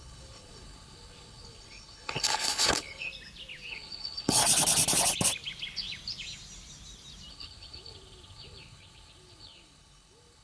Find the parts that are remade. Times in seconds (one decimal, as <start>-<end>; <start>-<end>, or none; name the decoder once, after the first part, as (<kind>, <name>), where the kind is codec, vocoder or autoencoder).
0.0-3.1 (codec, HILCodec); 3.7-4.4; 7.3-10.4